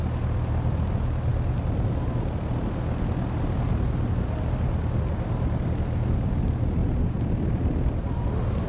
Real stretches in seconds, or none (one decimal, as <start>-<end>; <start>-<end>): 0.0-6.8; 7.3-8.7